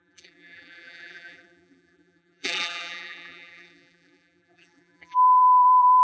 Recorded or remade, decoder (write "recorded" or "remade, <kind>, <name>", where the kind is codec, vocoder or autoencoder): remade, vocoder, BigVGAN v2